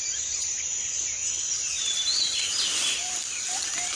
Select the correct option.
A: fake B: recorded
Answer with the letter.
B